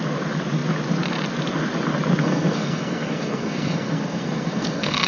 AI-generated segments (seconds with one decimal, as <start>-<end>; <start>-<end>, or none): 2.2-5.1